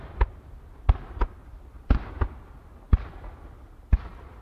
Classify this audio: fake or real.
real